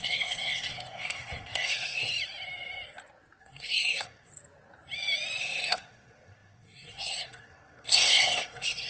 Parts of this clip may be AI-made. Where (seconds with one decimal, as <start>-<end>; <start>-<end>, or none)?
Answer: 0.0-2.1; 3.4-4.3; 5.4-8.9